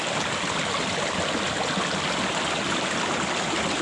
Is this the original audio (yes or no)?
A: yes